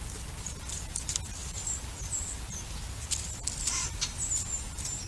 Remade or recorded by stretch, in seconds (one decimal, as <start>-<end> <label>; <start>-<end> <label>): 0.0-5.1 recorded